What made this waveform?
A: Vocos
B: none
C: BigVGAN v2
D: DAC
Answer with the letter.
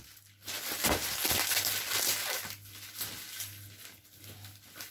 B